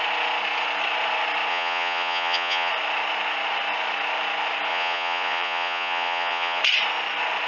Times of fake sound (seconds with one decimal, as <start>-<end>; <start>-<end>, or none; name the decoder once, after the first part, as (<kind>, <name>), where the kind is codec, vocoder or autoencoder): 1.5-2.7 (vocoder, Vocos); 4.7-6.6